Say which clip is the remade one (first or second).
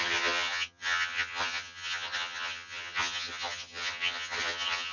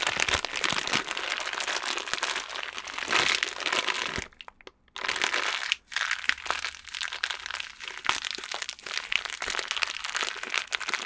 first